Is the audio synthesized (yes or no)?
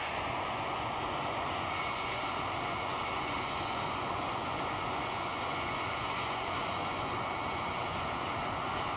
yes